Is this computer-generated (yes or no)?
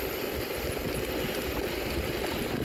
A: no